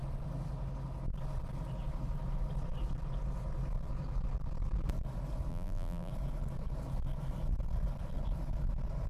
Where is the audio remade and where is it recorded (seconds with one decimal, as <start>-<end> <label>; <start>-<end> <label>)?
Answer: 0.0-5.5 recorded; 5.5-6.1 remade; 6.1-9.1 recorded